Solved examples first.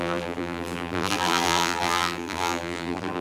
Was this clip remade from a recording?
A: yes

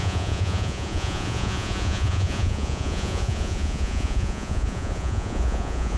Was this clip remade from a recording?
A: yes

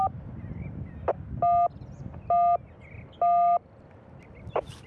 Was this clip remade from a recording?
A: no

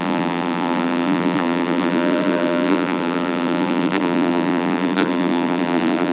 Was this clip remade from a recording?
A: yes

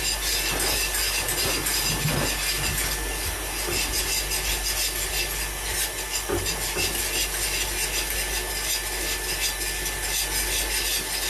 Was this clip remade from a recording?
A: no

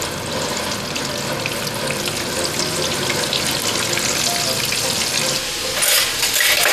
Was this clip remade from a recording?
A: no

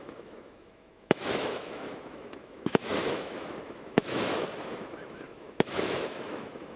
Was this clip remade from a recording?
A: yes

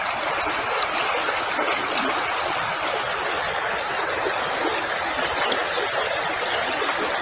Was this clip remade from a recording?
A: no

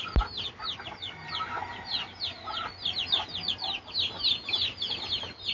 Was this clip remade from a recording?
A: no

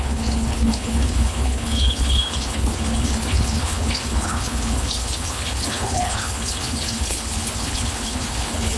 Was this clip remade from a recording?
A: yes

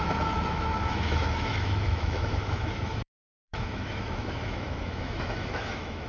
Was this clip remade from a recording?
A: yes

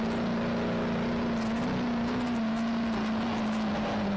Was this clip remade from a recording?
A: no